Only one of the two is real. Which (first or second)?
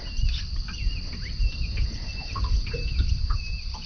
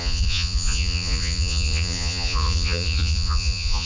first